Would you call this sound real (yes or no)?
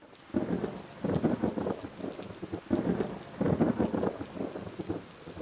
yes